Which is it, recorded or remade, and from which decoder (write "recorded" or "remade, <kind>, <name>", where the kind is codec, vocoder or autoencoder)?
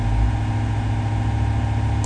recorded